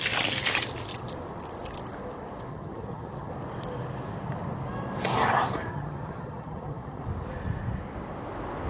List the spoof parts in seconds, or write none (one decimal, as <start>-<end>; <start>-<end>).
2.5-3.3; 5.7-7.0